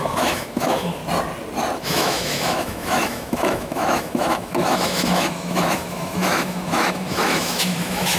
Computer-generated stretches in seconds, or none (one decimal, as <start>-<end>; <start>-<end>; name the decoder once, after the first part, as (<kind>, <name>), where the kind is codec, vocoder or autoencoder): 0.0-1.0 (autoencoder, DAC-VAE); 1.8-8.2